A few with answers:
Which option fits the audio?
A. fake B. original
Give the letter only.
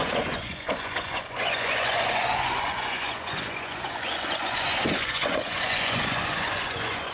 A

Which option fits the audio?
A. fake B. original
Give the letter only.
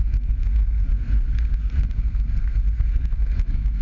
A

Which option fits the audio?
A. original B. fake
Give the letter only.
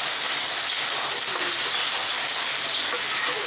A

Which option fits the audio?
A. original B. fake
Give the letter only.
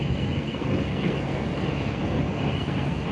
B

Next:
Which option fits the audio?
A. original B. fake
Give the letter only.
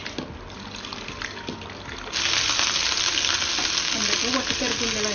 A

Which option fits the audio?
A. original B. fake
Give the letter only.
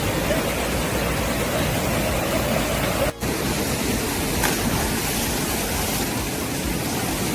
A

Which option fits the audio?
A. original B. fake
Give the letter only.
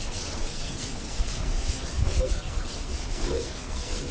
B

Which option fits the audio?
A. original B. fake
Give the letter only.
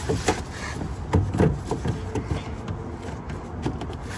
A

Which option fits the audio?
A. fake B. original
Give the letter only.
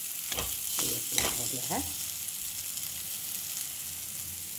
B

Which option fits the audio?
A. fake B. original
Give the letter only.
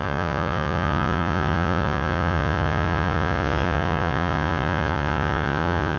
A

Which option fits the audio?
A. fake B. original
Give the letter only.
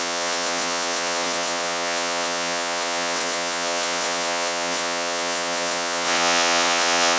A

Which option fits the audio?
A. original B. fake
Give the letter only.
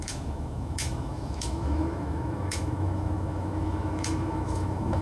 B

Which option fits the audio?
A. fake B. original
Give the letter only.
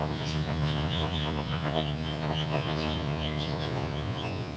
A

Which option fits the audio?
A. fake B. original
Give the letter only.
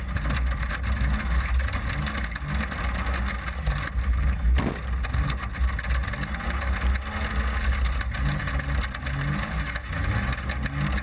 B